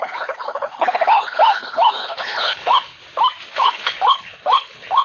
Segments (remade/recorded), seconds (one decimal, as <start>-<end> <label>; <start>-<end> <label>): 0.0-3.0 remade; 3.0-3.5 recorded; 3.5-5.0 remade